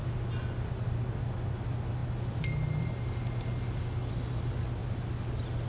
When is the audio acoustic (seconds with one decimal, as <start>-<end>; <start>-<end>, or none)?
0.0-5.7